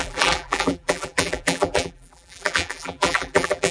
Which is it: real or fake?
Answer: fake